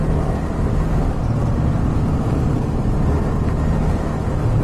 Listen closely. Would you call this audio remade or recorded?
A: recorded